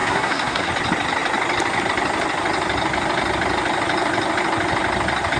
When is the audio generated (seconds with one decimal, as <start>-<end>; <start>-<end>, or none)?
0.0-0.7